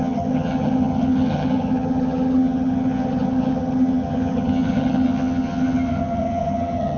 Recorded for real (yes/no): no